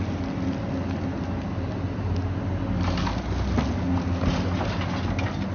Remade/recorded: recorded